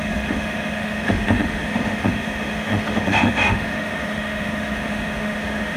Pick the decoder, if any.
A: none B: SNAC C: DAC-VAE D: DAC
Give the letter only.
C